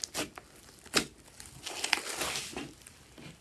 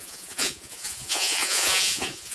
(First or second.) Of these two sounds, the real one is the first